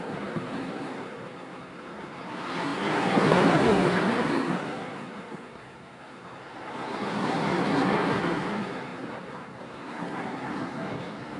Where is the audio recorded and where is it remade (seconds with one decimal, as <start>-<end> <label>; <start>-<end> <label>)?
0.0-11.4 remade